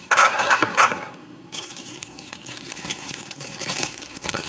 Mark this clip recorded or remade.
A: remade